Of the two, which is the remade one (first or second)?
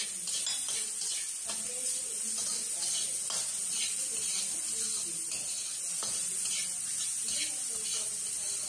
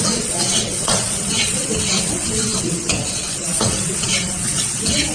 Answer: second